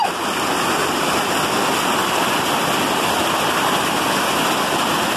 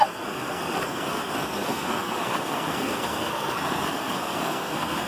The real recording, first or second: first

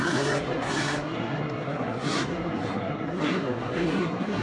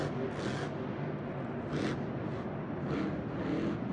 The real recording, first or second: second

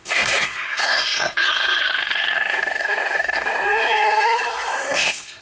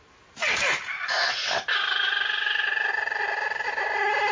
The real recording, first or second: second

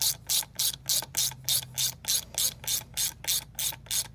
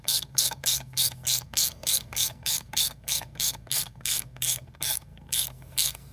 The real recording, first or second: first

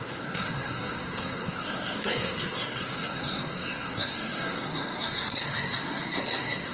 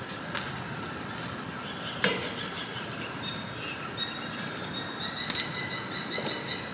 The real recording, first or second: second